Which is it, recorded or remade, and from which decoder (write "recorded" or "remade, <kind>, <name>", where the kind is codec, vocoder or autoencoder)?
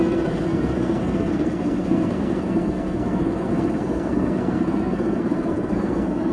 remade, codec, SNAC